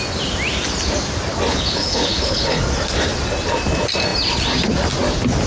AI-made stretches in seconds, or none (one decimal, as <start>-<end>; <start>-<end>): 1.5-2.6